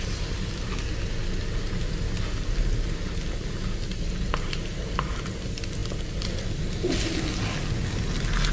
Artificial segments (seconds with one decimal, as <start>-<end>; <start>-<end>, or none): none